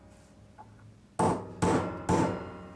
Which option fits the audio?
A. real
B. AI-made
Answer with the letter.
A